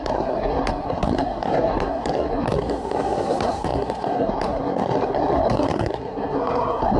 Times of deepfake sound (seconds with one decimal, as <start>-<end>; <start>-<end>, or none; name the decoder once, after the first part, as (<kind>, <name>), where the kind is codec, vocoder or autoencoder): 0.0-7.0 (codec, SNAC)

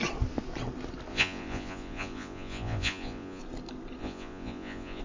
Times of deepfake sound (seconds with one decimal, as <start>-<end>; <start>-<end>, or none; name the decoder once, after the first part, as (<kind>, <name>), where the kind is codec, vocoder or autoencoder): 1.1-3.4 (vocoder, Vocos); 4.0-5.0

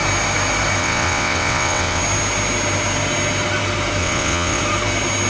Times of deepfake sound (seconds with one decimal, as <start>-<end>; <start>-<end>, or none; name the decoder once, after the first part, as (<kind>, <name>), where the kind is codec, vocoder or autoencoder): 0.8-2.0 (vocoder, WaveNeXt); 4.0-4.6